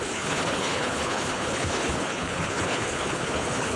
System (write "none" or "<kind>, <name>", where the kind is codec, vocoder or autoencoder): codec, HILCodec